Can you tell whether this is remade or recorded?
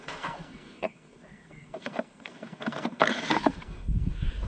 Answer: remade